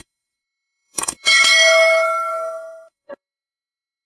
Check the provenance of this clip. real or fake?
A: fake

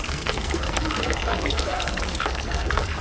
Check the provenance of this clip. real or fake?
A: fake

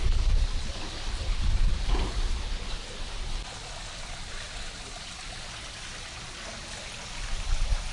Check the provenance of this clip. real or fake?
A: real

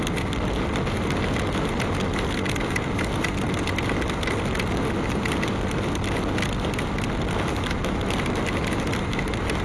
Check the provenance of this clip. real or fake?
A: real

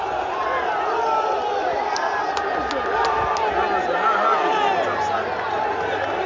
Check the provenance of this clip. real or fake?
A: real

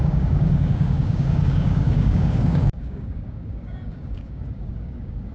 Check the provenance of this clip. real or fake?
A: fake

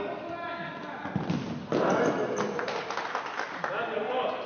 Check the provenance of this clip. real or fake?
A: real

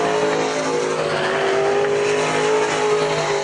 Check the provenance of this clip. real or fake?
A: real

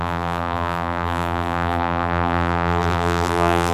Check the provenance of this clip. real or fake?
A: fake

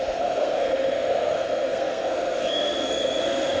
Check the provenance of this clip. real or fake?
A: fake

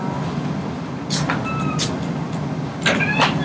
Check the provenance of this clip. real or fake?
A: real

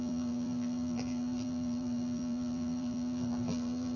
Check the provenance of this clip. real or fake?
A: fake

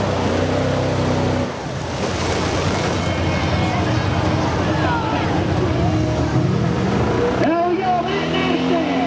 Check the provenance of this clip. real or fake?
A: real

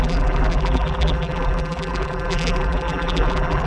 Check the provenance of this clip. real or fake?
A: fake